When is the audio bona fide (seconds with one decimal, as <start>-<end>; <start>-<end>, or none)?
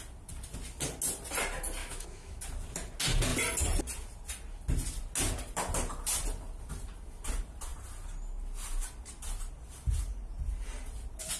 0.0-1.8; 2.4-11.4